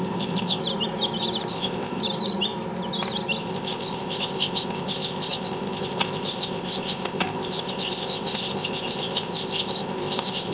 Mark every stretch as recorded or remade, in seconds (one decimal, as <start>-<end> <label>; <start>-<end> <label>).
0.0-0.6 remade; 0.6-1.5 recorded; 1.5-2.0 remade; 2.0-3.4 recorded; 3.4-10.5 remade